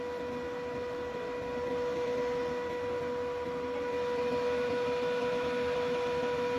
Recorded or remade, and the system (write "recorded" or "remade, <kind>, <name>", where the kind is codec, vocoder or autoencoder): recorded